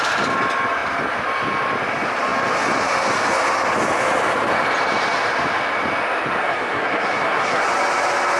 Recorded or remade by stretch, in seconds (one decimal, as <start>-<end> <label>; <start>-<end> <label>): 0.0-6.4 recorded; 6.4-7.6 remade; 7.6-8.4 recorded